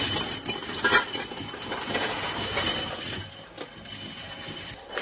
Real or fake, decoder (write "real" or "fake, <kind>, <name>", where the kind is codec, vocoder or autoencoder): fake, vocoder, BigVGAN v2